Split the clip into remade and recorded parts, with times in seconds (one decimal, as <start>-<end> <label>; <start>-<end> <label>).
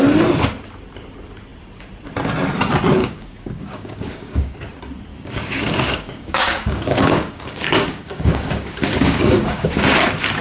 0.0-3.0 recorded; 3.0-4.6 remade; 4.6-5.1 recorded; 5.1-9.8 remade; 9.8-10.4 recorded